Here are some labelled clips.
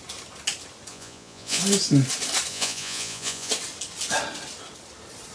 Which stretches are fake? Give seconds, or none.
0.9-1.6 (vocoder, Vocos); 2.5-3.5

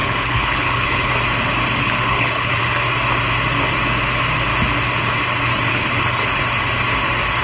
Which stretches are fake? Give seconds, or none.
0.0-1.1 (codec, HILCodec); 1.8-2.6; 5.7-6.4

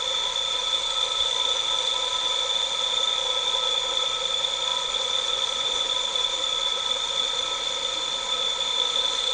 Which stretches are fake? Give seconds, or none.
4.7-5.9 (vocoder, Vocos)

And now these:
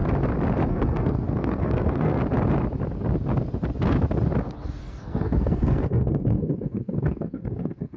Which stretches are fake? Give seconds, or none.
0.7-2.2 (codec, SNAC); 4.8-8.0

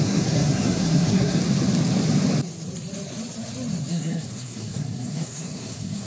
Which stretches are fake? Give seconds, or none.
0.0-1.4 (codec, SNAC); 3.9-6.1